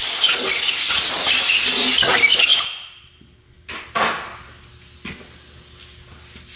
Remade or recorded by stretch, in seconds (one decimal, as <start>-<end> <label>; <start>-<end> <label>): 0.0-2.5 recorded; 2.5-3.9 remade; 3.9-6.6 recorded